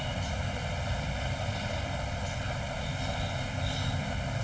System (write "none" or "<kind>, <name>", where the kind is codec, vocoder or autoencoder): none